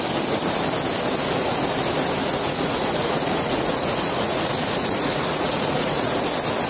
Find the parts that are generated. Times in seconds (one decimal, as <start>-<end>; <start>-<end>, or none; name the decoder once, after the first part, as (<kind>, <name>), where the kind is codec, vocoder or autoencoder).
2.2-6.2 (vocoder, Vocos)